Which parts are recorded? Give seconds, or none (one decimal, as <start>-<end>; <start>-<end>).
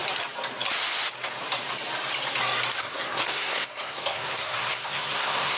0.0-2.8